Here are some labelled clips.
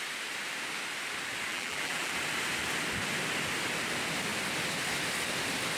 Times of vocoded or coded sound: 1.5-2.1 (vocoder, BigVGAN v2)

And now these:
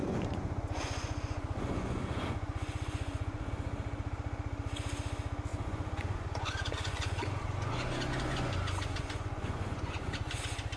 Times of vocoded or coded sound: 0.0-3.5 (vocoder, Vocos); 5.5-10.4

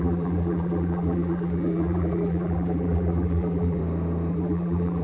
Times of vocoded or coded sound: 0.0-3.8 (vocoder, BigVGAN v2); 4.3-5.0

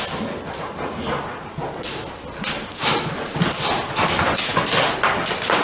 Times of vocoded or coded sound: none

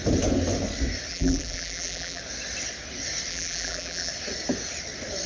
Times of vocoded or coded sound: 1.1-2.2 (vocoder, BigVGAN v2); 3.3-4.1